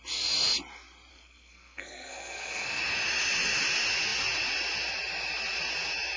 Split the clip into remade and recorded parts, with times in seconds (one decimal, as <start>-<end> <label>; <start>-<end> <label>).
0.0-1.1 recorded; 1.1-2.8 remade; 2.8-6.2 recorded